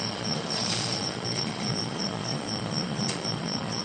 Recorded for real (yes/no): no